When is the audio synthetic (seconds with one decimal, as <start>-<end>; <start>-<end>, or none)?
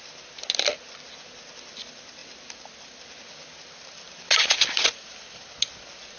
none